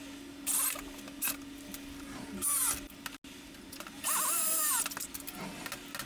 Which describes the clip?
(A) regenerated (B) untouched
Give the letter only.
B